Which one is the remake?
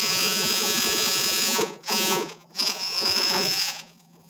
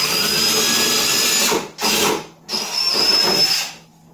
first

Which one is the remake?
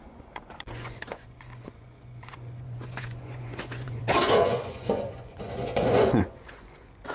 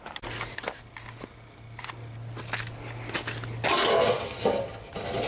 first